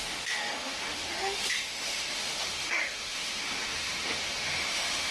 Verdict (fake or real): fake